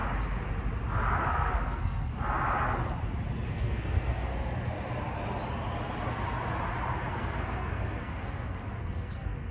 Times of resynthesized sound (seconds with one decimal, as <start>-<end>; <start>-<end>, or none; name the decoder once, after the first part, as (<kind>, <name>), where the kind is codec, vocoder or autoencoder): 1.2-2.1 (codec, SNAC); 3.5-4.3; 7.1-9.5